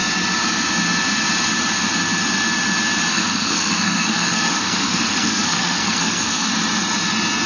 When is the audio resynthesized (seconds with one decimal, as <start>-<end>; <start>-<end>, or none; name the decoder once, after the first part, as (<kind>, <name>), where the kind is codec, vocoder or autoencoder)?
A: 3.1-6.5 (codec, SNAC)